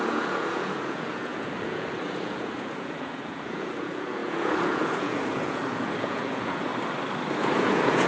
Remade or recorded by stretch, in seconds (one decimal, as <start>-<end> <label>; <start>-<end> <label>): 0.0-6.7 remade; 6.7-7.4 recorded; 7.4-8.1 remade